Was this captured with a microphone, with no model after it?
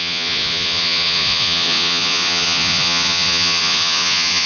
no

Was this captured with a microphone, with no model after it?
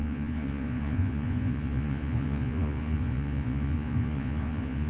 no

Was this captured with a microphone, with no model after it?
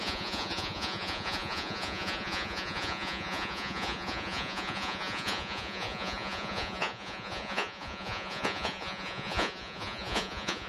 no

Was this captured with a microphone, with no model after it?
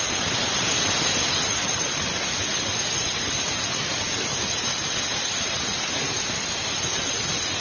yes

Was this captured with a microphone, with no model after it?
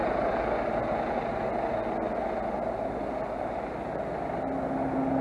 yes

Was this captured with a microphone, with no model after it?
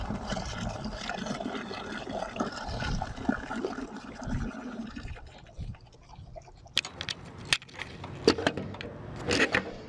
yes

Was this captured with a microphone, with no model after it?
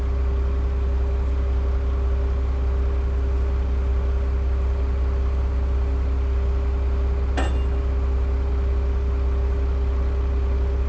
yes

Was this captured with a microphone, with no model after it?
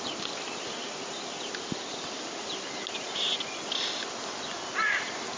yes